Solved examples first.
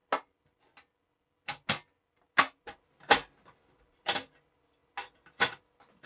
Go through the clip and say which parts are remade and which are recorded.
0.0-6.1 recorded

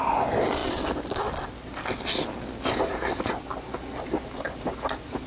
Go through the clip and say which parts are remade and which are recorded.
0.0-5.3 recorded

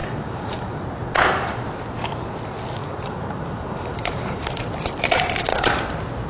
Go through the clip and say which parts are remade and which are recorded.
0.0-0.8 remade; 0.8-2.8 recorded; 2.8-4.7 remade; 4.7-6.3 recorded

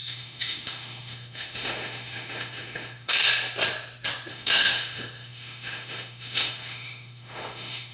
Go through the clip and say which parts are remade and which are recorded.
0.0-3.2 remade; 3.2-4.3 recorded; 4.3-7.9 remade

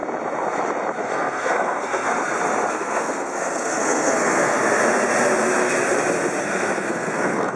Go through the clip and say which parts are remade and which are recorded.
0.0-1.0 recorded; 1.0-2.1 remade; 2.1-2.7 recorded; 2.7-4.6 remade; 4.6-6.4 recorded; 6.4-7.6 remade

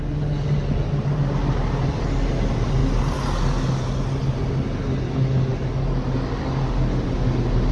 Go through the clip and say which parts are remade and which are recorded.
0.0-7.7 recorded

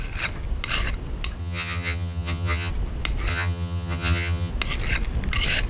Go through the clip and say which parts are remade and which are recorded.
0.0-1.4 recorded; 1.4-2.7 remade; 2.7-3.3 recorded; 3.3-4.5 remade; 4.5-5.7 recorded

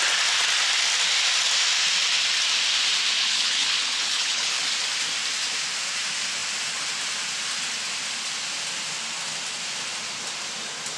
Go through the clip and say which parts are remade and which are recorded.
0.0-3.2 recorded; 3.2-4.6 remade; 4.6-11.0 recorded